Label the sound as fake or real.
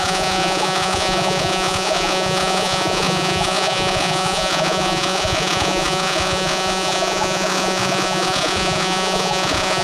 fake